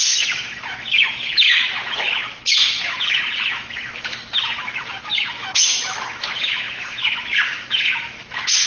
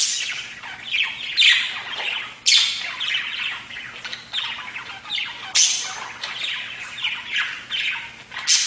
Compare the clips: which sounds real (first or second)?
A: second